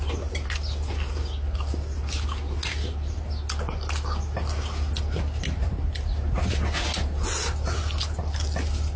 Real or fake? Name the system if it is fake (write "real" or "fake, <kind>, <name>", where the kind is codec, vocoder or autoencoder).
real